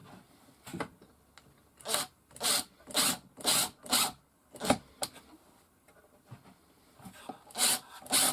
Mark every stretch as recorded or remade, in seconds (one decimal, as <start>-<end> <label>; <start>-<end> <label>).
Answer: 0.0-8.3 recorded